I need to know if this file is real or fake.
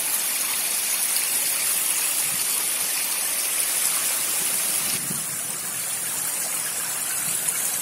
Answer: real